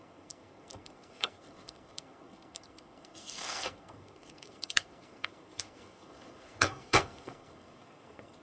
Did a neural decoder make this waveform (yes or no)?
yes